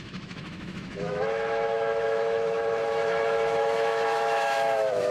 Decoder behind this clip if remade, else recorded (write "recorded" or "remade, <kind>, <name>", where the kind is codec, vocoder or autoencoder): remade, autoencoder, DAC-VAE